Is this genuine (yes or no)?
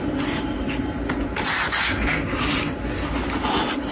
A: yes